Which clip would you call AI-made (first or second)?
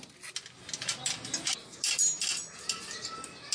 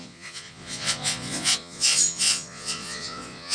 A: second